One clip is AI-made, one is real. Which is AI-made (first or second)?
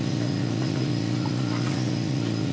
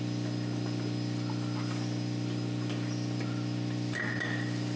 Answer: first